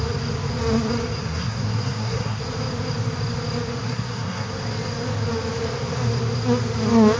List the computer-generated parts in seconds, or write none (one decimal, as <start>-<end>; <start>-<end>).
1.2-2.4; 3.8-4.5